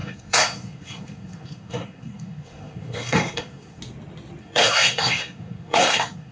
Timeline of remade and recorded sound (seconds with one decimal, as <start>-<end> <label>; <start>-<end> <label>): 0.0-3.8 remade; 3.8-4.4 recorded; 4.4-6.3 remade